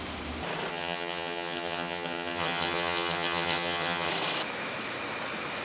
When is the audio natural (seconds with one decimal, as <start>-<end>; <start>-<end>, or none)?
0.0-0.7; 4.1-5.6